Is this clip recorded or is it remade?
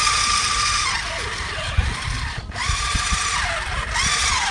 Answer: recorded